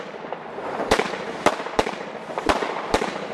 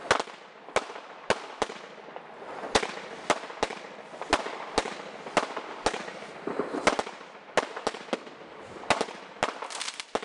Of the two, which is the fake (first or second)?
first